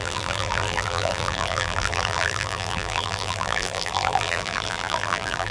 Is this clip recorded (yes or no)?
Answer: no